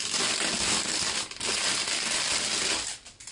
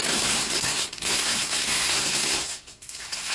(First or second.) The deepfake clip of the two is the second